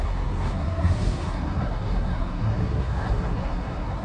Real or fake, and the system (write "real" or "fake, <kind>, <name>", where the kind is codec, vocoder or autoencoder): fake, codec, SNAC